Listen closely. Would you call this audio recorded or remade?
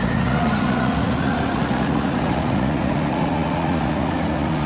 remade